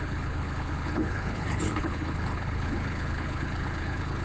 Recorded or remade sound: remade